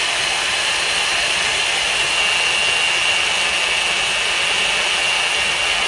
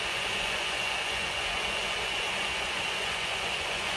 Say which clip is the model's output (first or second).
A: second